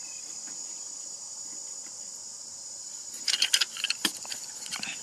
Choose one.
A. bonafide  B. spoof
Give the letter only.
A